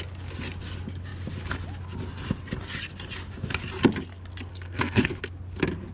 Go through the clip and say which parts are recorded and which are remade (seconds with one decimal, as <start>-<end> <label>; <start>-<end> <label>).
0.0-4.5 recorded; 4.5-5.2 remade; 5.2-5.9 recorded